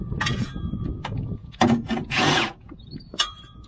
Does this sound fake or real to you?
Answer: fake